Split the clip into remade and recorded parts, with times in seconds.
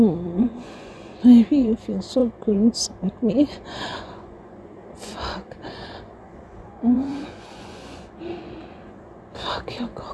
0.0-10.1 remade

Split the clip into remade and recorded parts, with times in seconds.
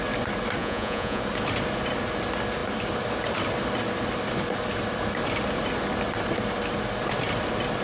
0.0-0.6 recorded; 0.6-1.2 remade; 1.2-7.8 recorded